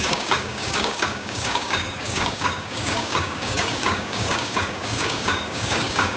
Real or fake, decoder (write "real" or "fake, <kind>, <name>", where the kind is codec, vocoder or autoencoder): fake, codec, DAC